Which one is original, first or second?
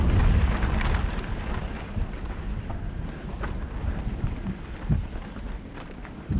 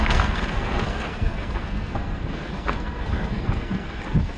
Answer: first